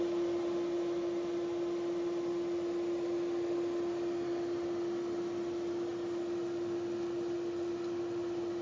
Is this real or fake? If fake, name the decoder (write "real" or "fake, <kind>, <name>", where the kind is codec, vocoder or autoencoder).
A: real